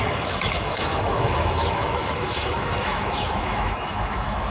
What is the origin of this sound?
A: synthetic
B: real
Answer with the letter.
A